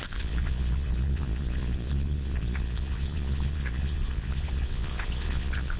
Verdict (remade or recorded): remade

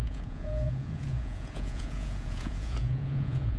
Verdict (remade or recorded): remade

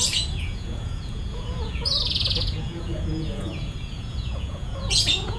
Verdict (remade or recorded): remade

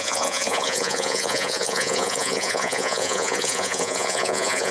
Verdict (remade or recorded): remade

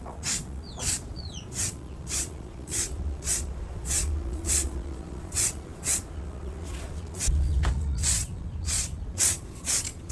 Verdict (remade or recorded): remade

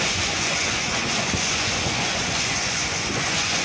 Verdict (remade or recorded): remade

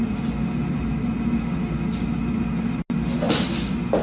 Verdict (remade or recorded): recorded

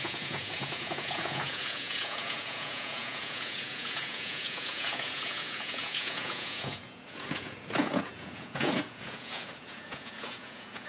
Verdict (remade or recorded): remade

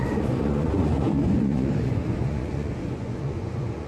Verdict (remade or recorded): remade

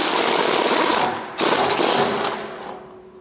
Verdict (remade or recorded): recorded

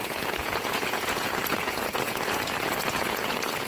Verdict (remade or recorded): remade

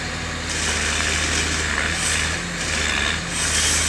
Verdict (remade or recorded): recorded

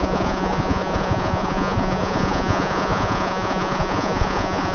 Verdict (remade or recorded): remade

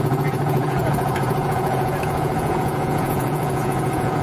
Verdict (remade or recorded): remade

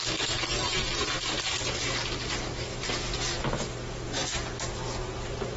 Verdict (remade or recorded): recorded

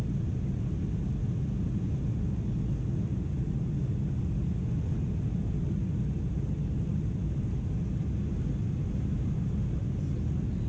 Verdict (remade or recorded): recorded